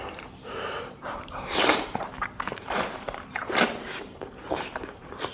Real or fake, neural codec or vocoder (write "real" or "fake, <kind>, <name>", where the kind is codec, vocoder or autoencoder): fake, vocoder, BigVGAN v2